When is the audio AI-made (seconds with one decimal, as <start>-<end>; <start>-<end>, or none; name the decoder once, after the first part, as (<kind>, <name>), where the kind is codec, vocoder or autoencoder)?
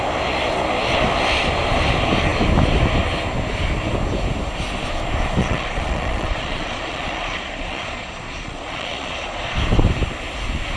5.4-9.6 (vocoder, Vocos)